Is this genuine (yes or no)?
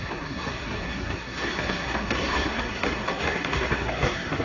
no